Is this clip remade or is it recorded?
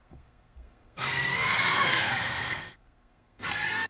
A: remade